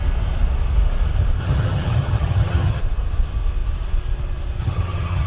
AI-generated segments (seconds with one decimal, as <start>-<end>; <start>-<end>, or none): 1.4-2.8; 4.6-5.3